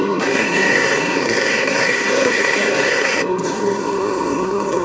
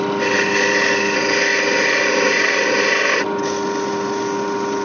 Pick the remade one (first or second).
first